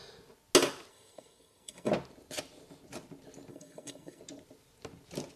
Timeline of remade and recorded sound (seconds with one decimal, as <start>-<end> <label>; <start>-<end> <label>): 0.0-0.9 recorded; 0.9-1.9 remade; 1.9-3.5 recorded; 3.5-4.2 remade; 4.2-5.4 recorded